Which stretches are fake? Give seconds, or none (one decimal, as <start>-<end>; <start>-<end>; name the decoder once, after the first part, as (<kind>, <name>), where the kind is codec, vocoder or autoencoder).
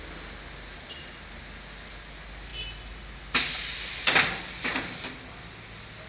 none